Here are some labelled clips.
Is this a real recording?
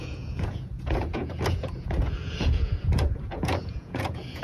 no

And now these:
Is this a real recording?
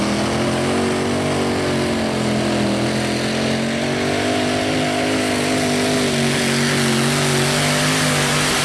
yes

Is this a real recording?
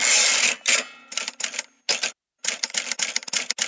yes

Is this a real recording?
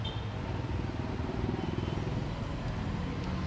yes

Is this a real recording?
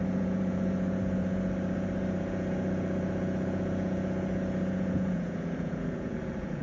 no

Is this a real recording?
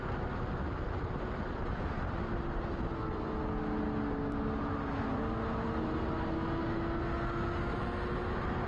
yes